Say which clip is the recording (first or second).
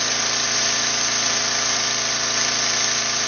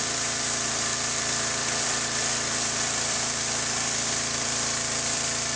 first